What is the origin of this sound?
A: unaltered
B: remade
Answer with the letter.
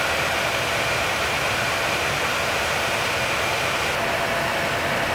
A